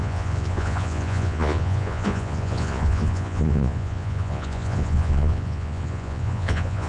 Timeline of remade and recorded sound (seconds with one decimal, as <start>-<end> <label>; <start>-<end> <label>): 0.0-6.9 remade